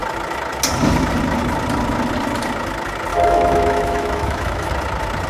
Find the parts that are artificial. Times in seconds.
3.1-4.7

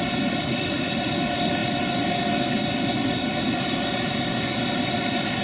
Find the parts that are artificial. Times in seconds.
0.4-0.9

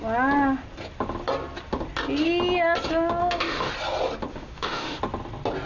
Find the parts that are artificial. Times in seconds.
3.2-3.7; 4.3-5.0

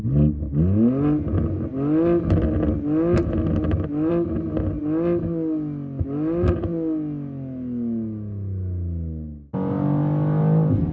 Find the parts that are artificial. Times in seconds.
none

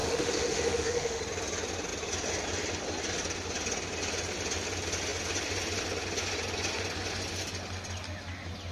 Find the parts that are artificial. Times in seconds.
0.0-1.2